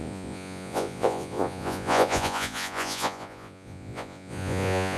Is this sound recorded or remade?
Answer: remade